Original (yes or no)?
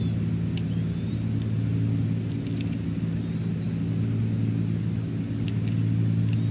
yes